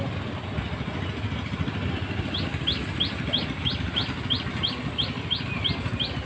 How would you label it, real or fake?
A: real